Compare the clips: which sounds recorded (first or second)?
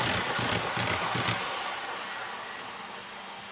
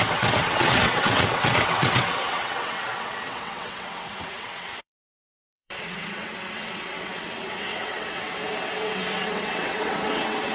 first